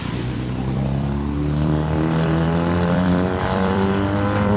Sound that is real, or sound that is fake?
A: fake